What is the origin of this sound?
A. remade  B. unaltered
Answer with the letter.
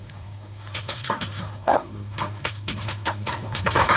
A